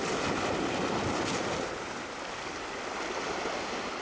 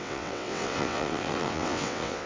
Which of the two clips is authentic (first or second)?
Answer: first